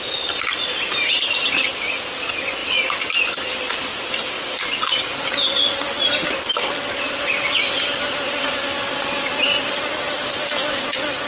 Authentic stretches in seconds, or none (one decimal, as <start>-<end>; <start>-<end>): 0.0-11.3